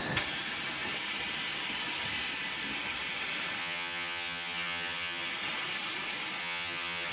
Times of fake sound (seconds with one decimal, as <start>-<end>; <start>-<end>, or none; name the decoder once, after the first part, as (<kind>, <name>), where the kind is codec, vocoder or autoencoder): 3.6-5.3 (vocoder, HiFi-GAN); 6.4-7.1